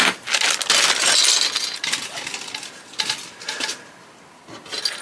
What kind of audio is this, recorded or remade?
recorded